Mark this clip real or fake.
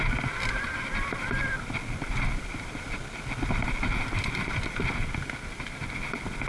real